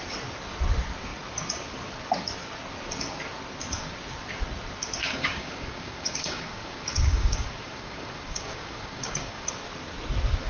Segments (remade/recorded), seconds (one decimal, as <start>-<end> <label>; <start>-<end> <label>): 0.0-5.0 recorded; 5.0-9.5 remade; 9.5-10.5 recorded